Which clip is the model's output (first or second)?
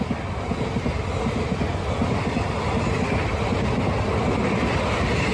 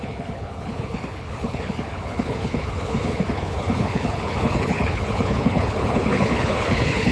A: second